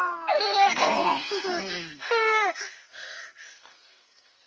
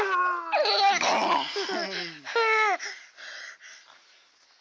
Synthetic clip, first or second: first